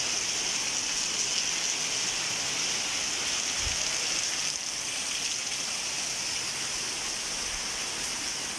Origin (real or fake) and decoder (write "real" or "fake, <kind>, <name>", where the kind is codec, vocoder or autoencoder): real